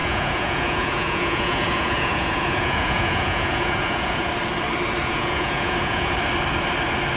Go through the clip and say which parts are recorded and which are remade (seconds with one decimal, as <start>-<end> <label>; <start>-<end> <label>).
0.0-4.3 remade; 4.3-5.0 recorded; 5.0-6.1 remade; 6.1-7.2 recorded